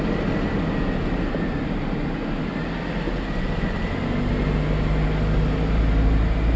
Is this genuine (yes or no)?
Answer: yes